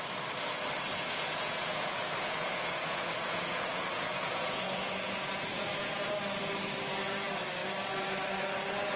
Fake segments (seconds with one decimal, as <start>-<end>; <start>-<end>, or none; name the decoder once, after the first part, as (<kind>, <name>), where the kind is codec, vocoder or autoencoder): 0.9-6.1 (vocoder, Vocos)